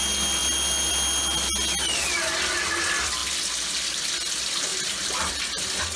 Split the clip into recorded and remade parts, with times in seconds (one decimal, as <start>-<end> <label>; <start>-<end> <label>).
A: 0.0-6.0 recorded